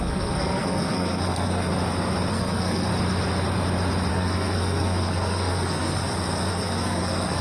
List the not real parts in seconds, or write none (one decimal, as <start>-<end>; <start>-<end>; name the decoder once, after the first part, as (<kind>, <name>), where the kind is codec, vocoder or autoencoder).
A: 0.0-1.7 (codec, SNAC); 2.3-2.9; 4.1-6.0; 6.5-7.4